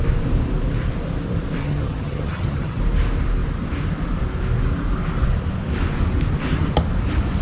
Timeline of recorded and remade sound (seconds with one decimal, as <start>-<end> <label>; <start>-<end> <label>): 0.0-1.6 recorded; 1.6-2.8 remade; 2.8-7.4 recorded